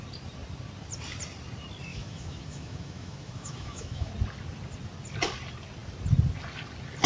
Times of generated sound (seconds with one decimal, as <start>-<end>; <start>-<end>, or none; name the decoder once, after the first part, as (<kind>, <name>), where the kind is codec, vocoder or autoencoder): 1.9-4.1 (autoencoder, DAC-VAE)